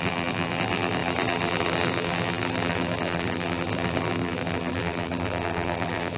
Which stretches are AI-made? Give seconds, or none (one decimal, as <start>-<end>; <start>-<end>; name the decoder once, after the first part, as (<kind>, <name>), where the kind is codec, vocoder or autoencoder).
0.0-6.2 (vocoder, BigVGAN v2)